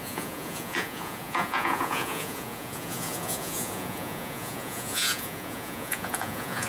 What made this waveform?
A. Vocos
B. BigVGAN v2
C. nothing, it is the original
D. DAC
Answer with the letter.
A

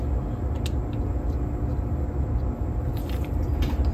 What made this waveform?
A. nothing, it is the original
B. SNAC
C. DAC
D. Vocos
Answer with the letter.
A